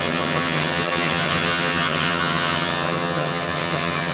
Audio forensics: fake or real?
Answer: fake